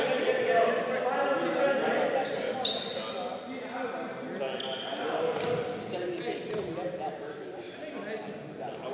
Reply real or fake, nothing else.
real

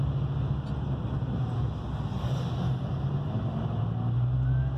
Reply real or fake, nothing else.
real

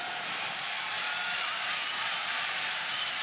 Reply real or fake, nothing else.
fake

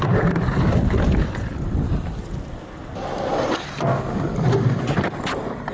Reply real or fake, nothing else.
real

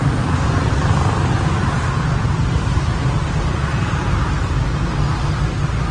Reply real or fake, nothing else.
real